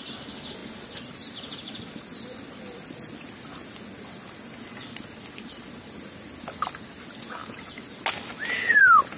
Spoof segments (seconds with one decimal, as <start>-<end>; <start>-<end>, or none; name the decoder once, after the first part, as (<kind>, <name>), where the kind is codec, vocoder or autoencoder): none